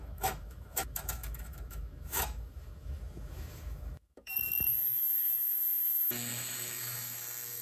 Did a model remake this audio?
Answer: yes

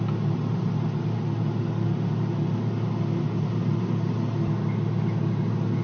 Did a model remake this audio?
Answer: no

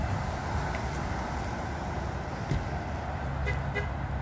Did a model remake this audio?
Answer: no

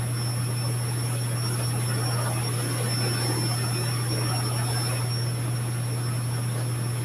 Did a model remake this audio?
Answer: no